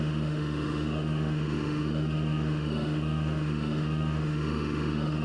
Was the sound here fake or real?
fake